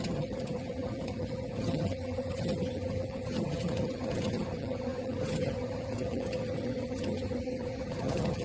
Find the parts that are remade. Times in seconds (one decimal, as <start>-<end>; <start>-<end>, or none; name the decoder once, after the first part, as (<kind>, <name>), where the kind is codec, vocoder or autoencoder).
0.0-8.4 (vocoder, HiFi-GAN)